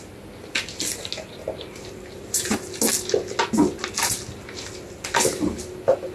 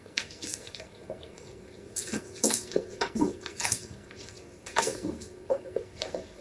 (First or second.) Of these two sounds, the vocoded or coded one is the second